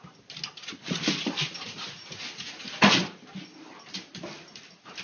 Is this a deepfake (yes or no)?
no